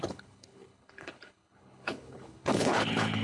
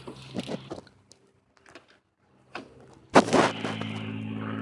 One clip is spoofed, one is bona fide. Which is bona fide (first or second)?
second